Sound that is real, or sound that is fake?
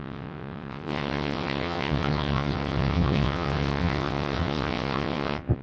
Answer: fake